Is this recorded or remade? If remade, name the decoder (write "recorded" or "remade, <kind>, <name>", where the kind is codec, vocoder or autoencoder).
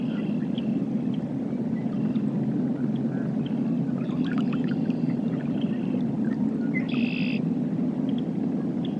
recorded